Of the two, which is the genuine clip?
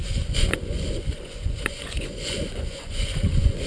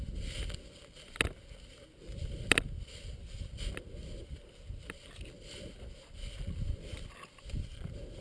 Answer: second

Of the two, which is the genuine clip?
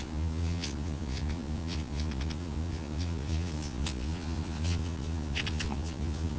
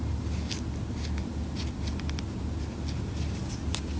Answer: second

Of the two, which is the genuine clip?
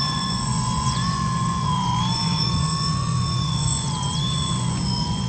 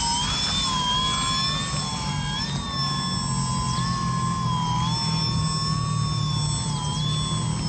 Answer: second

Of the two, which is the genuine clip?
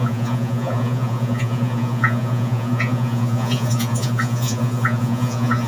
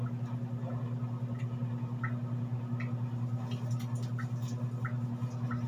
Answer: second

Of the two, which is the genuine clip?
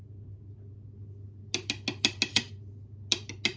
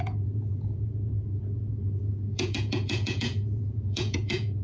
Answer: first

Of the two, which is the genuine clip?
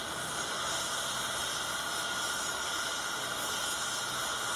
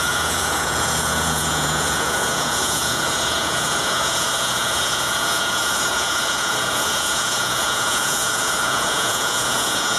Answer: first